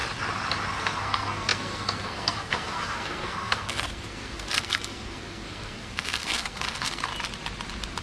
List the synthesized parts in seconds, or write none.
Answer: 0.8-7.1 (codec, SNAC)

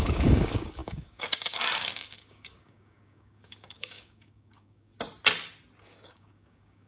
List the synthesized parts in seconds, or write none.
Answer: 0.0-4.9 (codec, DAC); 5.8-6.9

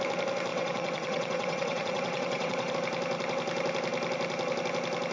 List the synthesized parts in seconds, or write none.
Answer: 0.5-2.7 (vocoder, WaveNeXt)

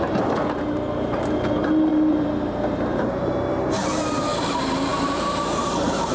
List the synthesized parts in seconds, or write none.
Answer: 0.0-6.1 (vocoder, BigVGAN v2)

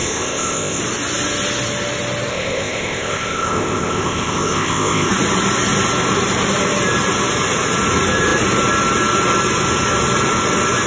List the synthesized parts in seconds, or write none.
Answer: 0.0-0.8 (codec, ZipCodec); 2.3-5.1